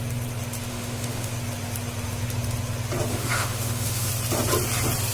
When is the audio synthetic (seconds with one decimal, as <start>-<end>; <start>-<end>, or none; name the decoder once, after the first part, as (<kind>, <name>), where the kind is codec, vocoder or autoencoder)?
0.7-1.3 (autoencoder, DAC-VAE); 3.1-4.1